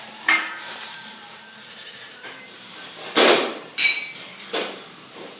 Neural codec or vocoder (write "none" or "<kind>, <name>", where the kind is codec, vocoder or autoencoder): vocoder, BigVGAN v2